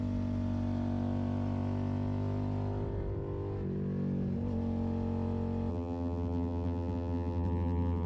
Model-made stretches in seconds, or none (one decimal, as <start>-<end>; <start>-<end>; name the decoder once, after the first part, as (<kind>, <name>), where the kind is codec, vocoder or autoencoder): 5.7-8.1 (vocoder, BigVGAN v2)